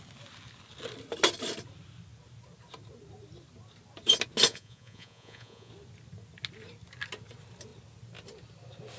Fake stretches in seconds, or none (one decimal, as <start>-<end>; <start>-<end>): 4.5-5.7